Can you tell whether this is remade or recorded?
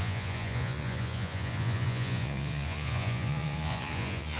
remade